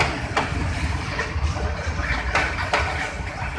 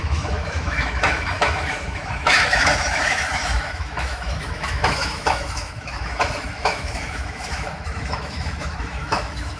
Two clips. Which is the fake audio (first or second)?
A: second